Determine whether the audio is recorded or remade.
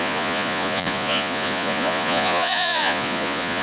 remade